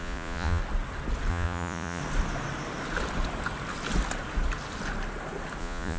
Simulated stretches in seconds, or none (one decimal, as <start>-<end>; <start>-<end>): 0.0-0.6; 1.3-2.0; 5.6-6.0